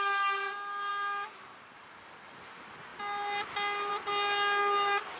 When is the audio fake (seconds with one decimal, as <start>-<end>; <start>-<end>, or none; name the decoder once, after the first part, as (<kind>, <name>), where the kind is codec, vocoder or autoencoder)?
none

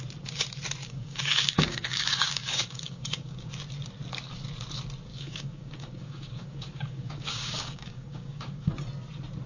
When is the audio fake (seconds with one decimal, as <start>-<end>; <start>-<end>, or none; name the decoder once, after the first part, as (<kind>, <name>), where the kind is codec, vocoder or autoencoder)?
0.8-3.6 (codec, DAC); 5.1-8.7

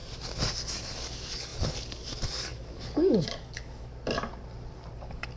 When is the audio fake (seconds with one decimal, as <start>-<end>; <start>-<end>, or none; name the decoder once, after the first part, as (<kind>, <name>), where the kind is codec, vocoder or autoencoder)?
0.7-3.9 (codec, DAC); 5.0-5.4

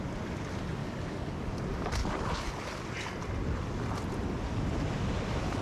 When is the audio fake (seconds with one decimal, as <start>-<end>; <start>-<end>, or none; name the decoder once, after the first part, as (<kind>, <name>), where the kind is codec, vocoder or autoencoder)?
0.8-1.5 (codec, DAC); 2.0-2.5

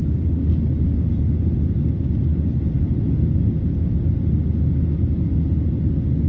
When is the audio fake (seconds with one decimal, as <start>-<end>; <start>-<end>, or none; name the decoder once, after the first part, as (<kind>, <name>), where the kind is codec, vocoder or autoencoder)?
none

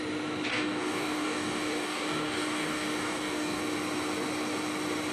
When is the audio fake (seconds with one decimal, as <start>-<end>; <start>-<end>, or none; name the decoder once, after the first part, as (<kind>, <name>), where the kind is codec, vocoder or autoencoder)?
0.5-3.6 (codec, DAC)